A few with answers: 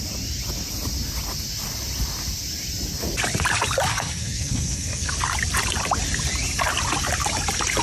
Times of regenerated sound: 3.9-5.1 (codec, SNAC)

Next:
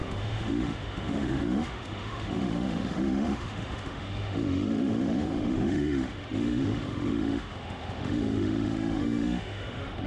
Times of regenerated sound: 0.0-10.1 (autoencoder, DAC-VAE)

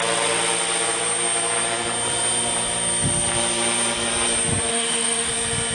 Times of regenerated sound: 4.7-5.3 (autoencoder, DAC-VAE)

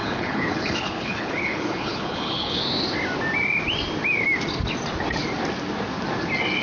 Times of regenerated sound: 0.0-2.6 (codec, HILCodec)

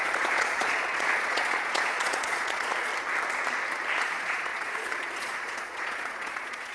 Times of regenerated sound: 0.0-2.9 (vocoder, Vocos); 4.0-6.7

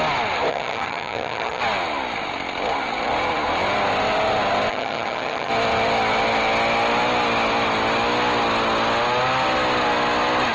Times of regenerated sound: 0.5-1.6 (vocoder, HiFi-GAN); 4.7-5.5

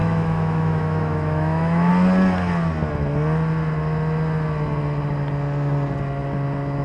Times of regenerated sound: 0.0-1.9 (autoencoder, DAC-VAE)

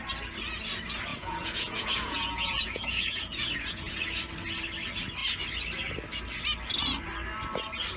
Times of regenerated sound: 1.1-3.9 (vocoder, Vocos)